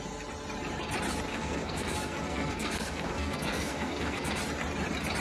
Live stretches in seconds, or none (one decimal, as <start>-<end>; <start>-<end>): 0.0-1.3; 4.4-5.2